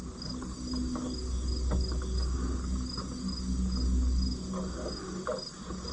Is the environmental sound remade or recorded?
recorded